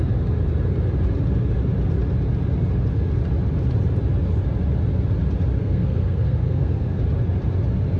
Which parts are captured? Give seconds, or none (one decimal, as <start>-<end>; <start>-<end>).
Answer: 0.0-5.6; 7.0-8.0

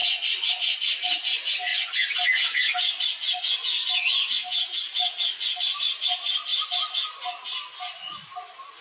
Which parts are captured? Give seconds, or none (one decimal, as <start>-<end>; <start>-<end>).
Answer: 0.0-8.8

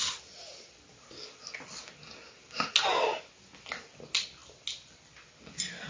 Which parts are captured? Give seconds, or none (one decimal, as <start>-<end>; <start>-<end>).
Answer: 0.0-5.9

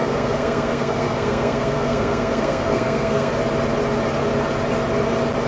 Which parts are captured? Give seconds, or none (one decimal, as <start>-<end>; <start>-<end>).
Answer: 3.3-5.5

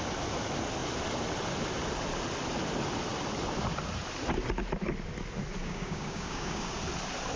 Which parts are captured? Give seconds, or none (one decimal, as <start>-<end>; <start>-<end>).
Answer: 0.0-5.6; 6.8-7.4

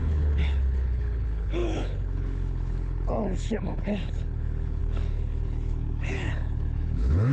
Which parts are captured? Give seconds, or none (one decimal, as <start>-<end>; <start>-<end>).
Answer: none

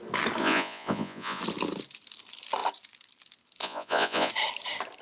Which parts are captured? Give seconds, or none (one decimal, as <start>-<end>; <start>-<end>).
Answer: 0.0-0.4; 1.4-3.6; 4.3-5.0